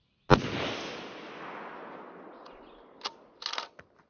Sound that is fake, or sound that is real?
real